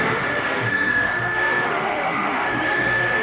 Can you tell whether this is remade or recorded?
remade